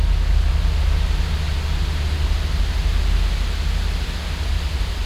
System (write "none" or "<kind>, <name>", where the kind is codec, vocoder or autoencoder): none